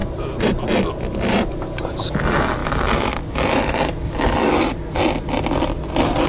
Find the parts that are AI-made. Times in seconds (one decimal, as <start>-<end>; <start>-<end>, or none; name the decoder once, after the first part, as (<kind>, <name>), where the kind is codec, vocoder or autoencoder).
none

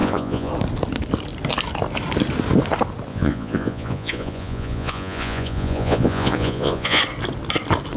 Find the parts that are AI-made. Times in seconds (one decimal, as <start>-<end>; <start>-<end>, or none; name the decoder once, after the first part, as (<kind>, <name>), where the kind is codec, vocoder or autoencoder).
0.0-0.5 (vocoder, Vocos); 3.1-7.0

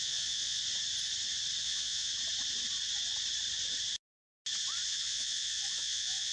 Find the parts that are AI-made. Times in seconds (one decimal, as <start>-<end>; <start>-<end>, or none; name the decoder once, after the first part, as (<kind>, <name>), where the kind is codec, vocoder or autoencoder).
0.0-0.6 (vocoder, Vocos); 1.6-2.1; 4.9-6.3

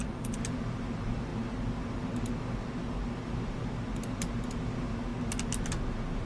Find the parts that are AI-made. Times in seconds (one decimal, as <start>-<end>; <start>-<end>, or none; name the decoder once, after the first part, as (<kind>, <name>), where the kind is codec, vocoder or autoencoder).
none

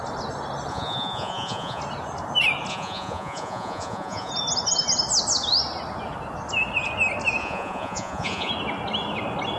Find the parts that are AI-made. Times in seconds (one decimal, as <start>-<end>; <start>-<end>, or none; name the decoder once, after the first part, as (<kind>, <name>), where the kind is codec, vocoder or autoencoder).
0.7-1.8 (vocoder, Vocos); 2.7-4.3; 7.4-8.5

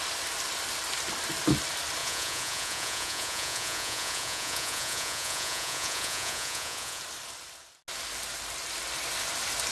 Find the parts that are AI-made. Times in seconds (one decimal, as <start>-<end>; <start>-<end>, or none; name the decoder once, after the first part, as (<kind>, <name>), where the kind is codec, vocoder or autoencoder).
2.0-7.0 (vocoder, Vocos)

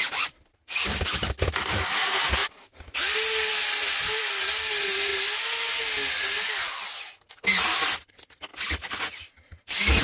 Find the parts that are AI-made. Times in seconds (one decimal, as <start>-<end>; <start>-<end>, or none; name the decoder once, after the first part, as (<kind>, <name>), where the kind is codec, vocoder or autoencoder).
none

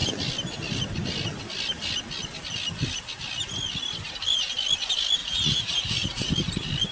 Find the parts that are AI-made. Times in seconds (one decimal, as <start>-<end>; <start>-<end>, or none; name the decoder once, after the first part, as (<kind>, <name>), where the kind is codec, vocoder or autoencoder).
5.2-6.3 (vocoder, Vocos)